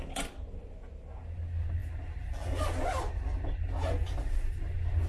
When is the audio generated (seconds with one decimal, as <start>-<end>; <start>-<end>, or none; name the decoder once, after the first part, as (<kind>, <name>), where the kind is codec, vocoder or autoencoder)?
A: none